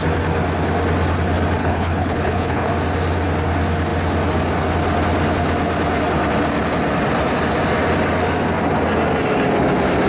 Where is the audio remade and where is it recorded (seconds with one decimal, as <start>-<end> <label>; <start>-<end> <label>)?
0.0-1.6 recorded; 1.6-2.7 remade; 2.7-10.1 recorded